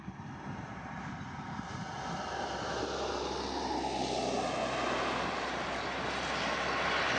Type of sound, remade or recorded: recorded